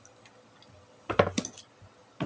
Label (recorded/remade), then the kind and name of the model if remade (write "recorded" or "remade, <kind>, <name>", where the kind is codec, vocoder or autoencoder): recorded